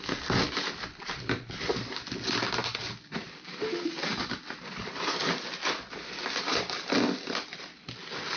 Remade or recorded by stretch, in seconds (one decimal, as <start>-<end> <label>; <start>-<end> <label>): 0.0-8.4 recorded